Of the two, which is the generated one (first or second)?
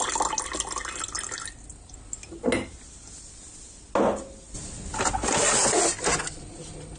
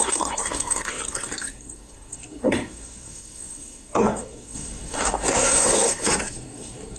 second